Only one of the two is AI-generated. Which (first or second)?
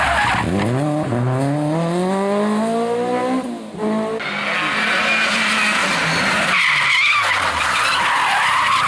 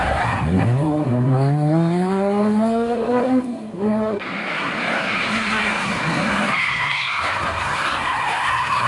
second